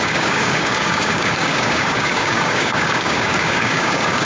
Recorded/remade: remade